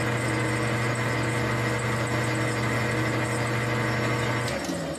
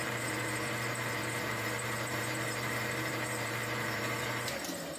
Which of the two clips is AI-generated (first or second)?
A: second